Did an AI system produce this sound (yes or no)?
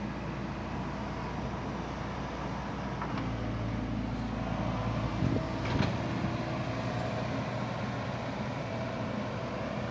no